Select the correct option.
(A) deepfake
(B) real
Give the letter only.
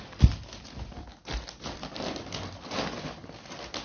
B